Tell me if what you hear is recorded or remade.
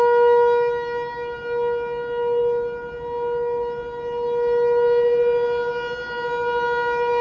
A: recorded